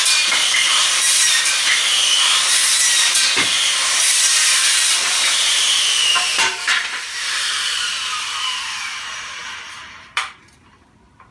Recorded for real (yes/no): no